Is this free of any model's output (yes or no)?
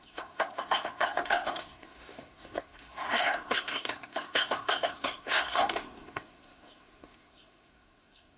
no